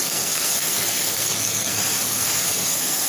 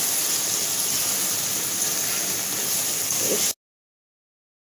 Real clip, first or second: second